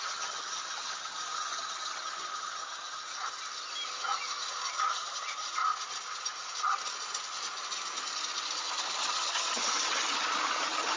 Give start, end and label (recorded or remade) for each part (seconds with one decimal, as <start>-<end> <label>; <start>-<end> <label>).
0.0-3.1 remade; 3.1-4.7 recorded; 4.7-5.6 remade; 5.6-9.0 recorded; 9.0-11.0 remade